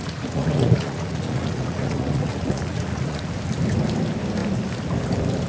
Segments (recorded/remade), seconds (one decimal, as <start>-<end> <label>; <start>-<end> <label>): 0.0-3.3 remade; 3.3-5.5 recorded